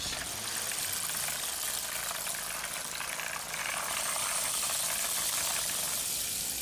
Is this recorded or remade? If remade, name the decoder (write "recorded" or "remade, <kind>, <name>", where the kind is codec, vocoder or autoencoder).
recorded